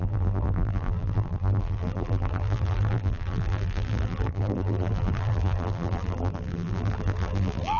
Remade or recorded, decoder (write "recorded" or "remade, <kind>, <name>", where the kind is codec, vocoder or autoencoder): remade, vocoder, BigVGAN v2